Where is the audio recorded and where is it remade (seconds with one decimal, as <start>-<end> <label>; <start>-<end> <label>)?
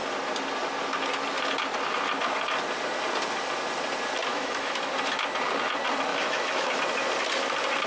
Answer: 0.0-4.3 recorded; 4.3-4.9 remade; 4.9-6.1 recorded; 6.1-6.8 remade; 6.8-7.9 recorded